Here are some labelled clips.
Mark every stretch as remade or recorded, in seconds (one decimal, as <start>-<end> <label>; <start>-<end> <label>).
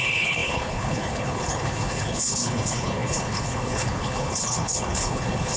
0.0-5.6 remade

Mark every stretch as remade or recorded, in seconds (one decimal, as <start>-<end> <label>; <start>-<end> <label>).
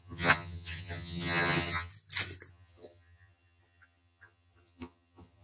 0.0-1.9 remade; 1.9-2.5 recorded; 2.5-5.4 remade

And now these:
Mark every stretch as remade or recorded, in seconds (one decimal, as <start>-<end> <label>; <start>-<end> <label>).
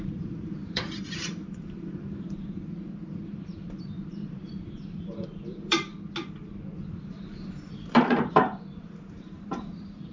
0.0-5.9 remade; 5.9-7.0 recorded; 7.0-10.1 remade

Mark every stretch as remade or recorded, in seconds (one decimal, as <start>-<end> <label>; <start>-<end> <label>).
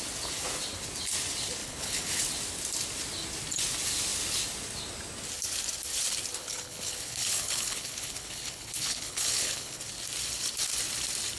0.0-1.6 recorded; 1.6-2.2 remade; 2.2-6.4 recorded; 6.4-9.8 remade; 9.8-11.4 recorded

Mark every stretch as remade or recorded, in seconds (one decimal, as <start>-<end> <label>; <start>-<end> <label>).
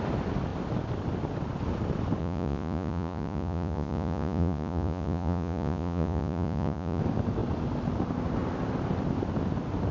0.0-2.2 recorded; 2.2-7.0 remade; 7.0-9.9 recorded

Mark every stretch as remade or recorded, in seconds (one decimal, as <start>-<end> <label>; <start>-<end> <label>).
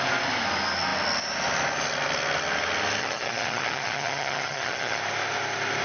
0.0-3.0 recorded; 3.0-5.0 remade; 5.0-5.8 recorded